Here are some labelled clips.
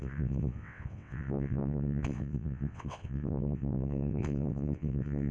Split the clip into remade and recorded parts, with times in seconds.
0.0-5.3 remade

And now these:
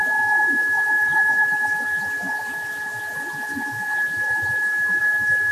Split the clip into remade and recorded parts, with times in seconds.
0.0-5.5 recorded